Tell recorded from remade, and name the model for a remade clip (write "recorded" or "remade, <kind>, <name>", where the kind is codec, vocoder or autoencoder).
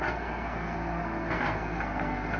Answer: remade, codec, SNAC